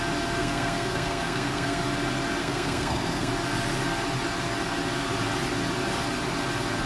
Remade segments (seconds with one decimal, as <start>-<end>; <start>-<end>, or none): 0.4-1.8; 2.4-3.3